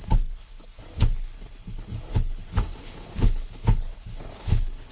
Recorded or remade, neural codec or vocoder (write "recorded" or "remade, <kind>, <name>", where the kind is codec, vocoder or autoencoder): remade, codec, HILCodec